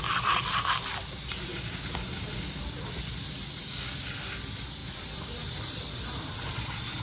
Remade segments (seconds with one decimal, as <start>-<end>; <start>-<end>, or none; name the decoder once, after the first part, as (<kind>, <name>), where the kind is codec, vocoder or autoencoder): 1.5-2.6 (codec, DAC); 3.6-4.1